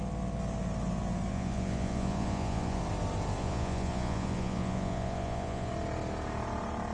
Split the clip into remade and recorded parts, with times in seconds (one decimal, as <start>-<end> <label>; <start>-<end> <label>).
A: 0.0-1.3 recorded; 1.3-2.8 remade; 2.8-3.4 recorded; 3.4-5.7 remade; 5.7-6.9 recorded